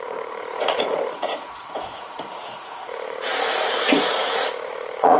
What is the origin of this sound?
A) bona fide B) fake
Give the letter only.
B